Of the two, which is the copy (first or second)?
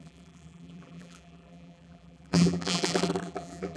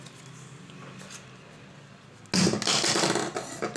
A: first